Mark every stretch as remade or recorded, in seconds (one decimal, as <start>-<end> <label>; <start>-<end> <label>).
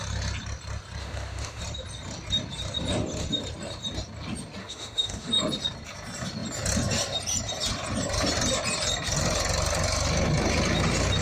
0.0-1.0 recorded; 1.0-1.6 remade; 1.6-4.6 recorded; 4.6-5.3 remade; 5.3-11.2 recorded